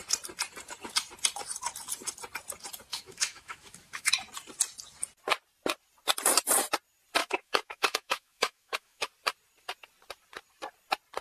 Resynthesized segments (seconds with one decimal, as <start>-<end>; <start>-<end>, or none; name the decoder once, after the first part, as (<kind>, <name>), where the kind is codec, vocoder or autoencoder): 2.9-4.1 (autoencoder, DAC-VAE); 7.2-9.1